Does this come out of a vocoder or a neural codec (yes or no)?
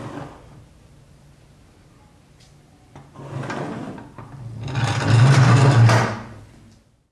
no